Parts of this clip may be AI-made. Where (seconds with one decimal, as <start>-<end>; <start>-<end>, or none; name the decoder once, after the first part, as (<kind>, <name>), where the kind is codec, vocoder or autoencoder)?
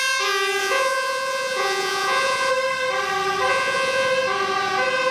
0.6-2.5 (vocoder, Vocos); 3.5-4.1